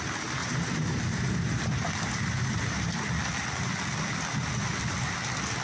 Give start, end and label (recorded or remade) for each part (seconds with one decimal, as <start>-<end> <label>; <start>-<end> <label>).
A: 0.0-0.4 recorded; 0.4-1.8 remade; 1.8-2.4 recorded; 2.4-3.0 remade; 3.0-5.6 recorded